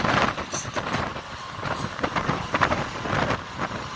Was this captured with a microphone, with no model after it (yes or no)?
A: yes